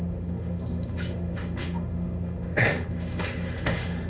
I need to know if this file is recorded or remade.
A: remade